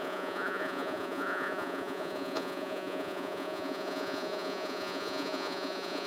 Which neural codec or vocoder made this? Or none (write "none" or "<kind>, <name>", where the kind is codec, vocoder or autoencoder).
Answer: vocoder, Vocos